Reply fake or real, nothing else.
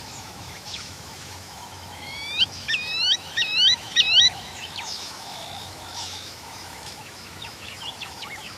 fake